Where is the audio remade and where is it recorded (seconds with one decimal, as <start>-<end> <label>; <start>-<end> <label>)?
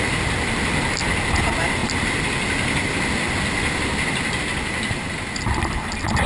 0.0-6.3 recorded